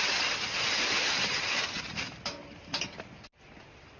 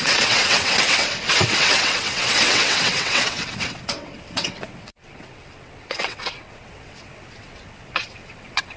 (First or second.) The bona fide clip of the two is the first